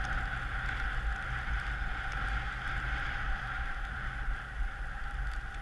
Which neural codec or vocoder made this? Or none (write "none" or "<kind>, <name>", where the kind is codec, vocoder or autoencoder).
none